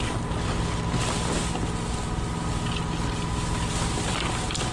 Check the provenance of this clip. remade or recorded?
recorded